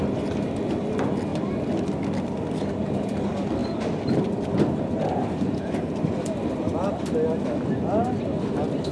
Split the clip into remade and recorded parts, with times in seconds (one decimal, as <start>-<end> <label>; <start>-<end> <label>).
0.0-8.9 recorded